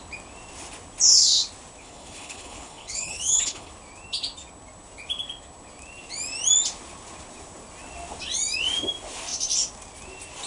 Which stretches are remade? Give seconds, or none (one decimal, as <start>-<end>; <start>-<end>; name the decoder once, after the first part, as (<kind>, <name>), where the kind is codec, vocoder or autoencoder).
1.8-3.7 (codec, HILCodec)